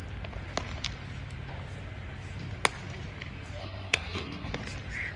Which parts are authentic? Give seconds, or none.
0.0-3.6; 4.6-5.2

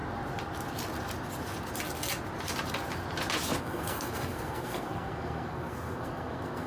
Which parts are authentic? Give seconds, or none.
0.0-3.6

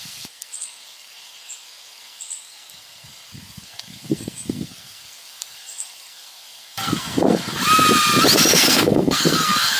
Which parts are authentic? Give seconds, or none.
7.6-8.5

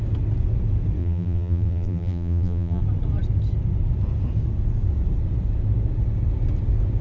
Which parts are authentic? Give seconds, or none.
0.0-1.0; 2.8-7.0

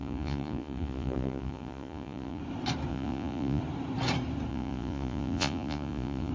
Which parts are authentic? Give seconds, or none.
2.4-2.9; 3.6-4.5

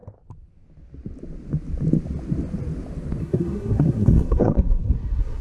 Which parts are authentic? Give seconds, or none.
0.0-3.2